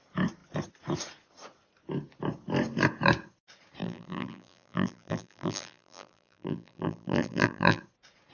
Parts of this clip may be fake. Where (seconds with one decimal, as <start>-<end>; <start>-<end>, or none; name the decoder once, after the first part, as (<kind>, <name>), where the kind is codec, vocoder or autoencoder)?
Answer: 3.8-7.8 (vocoder, BigVGAN v2)